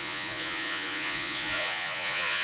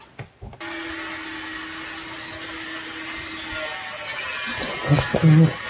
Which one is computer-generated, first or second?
first